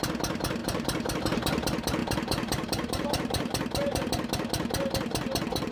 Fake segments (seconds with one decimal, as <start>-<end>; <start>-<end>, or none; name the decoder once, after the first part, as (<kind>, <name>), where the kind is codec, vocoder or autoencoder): 0.6-1.2 (vocoder, BigVGAN v2); 2.0-4.1